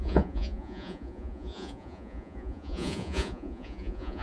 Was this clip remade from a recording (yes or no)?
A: yes